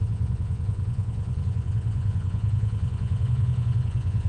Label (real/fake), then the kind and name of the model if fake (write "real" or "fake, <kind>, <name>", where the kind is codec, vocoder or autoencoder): fake, vocoder, Vocos